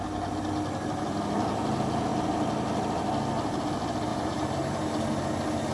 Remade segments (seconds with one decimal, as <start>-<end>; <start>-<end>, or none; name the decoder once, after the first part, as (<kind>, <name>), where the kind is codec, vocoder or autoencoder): 4.1-4.9 (vocoder, BigVGAN v2)